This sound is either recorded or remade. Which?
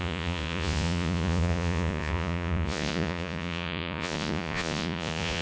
remade